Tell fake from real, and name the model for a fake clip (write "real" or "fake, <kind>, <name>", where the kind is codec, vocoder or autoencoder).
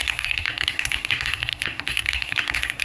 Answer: fake, codec, SNAC